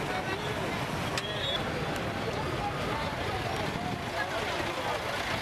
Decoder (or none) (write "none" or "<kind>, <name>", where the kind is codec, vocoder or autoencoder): none